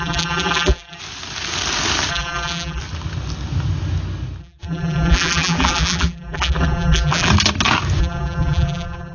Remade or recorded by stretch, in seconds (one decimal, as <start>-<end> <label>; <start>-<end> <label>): 0.0-1.0 remade; 1.0-2.1 recorded; 2.1-2.8 remade; 2.8-4.4 recorded; 4.4-7.3 remade; 7.3-8.0 recorded; 8.0-9.1 remade